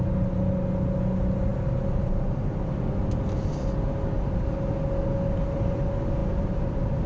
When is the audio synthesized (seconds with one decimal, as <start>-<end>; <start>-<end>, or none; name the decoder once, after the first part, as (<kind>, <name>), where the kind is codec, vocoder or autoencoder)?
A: none